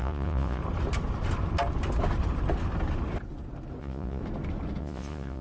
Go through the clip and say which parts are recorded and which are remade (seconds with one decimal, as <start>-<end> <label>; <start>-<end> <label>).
0.0-0.6 remade; 0.6-3.8 recorded; 3.8-4.2 remade; 4.2-4.8 recorded; 4.8-5.4 remade